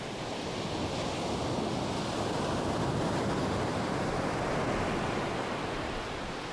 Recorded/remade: recorded